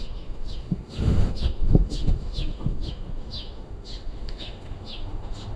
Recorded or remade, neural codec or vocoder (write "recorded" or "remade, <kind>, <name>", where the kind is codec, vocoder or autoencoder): remade, autoencoder, DAC-VAE